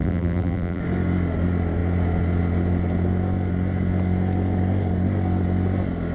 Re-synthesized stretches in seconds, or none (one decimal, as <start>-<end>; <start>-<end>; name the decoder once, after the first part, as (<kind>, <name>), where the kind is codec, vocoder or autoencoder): 0.0-0.8 (vocoder, BigVGAN v2)